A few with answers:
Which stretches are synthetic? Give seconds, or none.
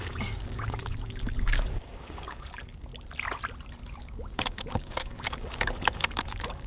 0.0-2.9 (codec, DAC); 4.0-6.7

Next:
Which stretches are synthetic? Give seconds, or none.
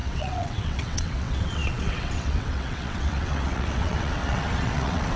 0.0-5.2 (vocoder, WaveNeXt)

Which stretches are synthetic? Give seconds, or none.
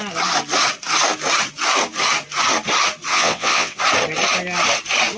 3.1-3.8 (vocoder, WaveNeXt)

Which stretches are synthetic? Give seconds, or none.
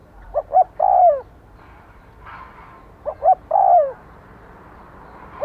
0.0-5.4 (vocoder, BigVGAN v2)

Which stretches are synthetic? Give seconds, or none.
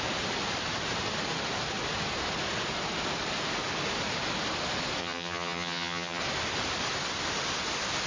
5.0-6.2 (vocoder, HiFi-GAN)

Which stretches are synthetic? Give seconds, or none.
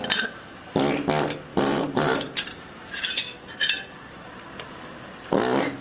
1.5-2.8 (vocoder, BigVGAN v2)